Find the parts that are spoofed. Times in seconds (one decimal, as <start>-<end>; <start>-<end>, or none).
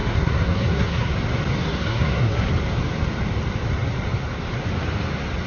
0.0-1.1; 1.6-2.5